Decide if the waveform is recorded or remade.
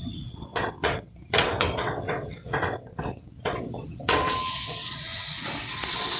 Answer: remade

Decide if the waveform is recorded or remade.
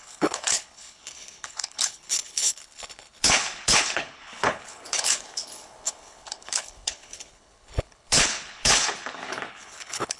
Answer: remade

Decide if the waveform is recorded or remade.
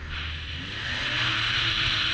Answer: recorded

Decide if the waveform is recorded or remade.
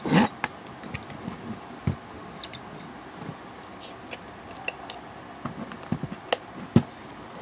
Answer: recorded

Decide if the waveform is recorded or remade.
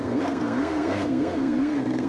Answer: remade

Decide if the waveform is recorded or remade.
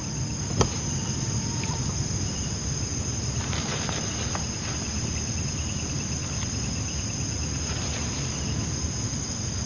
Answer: recorded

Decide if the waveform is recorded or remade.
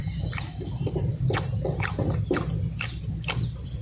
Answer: recorded